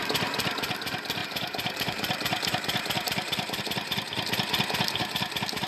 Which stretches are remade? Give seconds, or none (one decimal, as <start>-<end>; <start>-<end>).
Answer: 1.2-3.6